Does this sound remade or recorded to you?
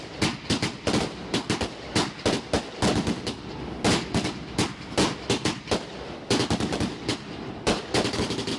recorded